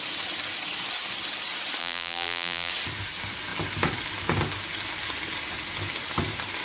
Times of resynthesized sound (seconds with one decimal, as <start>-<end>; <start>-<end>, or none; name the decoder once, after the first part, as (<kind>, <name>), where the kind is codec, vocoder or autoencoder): 1.8-2.7 (vocoder, BigVGAN v2)